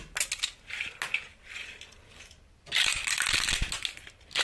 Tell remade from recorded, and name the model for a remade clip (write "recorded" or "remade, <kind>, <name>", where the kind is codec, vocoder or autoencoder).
recorded